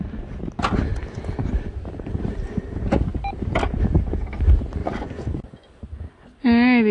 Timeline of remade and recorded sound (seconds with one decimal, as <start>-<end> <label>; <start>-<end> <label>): 0.0-4.8 recorded; 4.8-5.7 remade; 5.7-6.9 recorded